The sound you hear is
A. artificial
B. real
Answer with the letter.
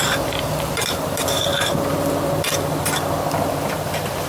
A